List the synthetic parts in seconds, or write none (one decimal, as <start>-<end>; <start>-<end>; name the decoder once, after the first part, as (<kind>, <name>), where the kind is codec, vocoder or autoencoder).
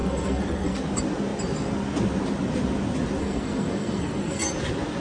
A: 0.0-0.8 (codec, SNAC); 3.2-4.5